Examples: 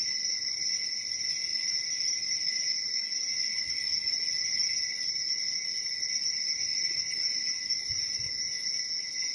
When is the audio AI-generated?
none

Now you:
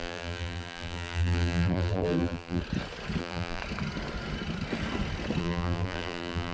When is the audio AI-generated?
0.0-2.6 (vocoder, BigVGAN v2); 3.2-3.6; 5.4-6.5

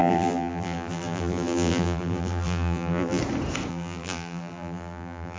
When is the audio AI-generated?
0.0-3.2 (vocoder, BigVGAN v2); 3.7-5.4

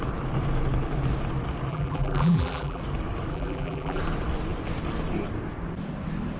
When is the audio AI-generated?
1.7-2.8 (vocoder, BigVGAN v2); 3.3-4.0

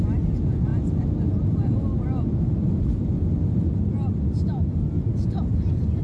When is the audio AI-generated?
none

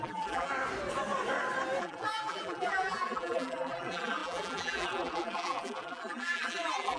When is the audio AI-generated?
0.0-0.5 (vocoder, BigVGAN v2); 1.8-7.0

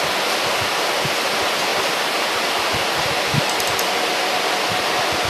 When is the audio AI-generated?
none